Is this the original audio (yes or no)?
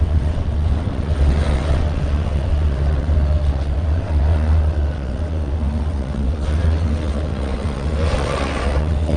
no